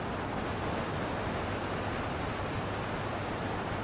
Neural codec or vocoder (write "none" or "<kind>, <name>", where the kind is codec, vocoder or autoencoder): none